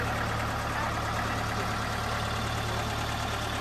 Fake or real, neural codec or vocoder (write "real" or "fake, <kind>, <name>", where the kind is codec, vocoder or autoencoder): real